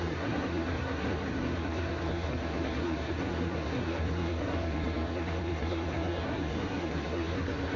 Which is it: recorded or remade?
remade